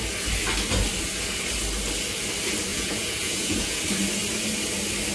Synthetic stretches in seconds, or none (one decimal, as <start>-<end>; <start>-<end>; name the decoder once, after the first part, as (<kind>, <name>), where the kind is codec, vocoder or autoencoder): 2.7-3.8 (vocoder, Vocos)